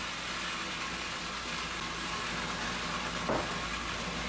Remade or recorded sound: recorded